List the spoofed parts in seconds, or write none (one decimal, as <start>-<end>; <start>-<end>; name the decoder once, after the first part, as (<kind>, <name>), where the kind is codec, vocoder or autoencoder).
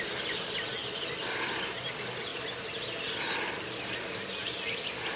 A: none